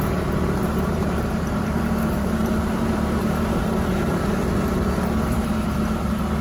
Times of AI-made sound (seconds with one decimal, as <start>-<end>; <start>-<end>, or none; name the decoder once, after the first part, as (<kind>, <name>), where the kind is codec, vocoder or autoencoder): 0.6-4.3 (vocoder, BigVGAN v2)